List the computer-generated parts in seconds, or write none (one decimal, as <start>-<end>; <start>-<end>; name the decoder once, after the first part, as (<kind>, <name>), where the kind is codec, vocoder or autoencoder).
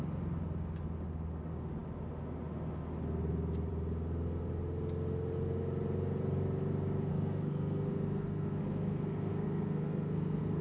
7.1-10.6 (codec, SNAC)